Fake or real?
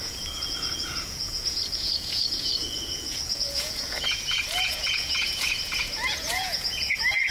fake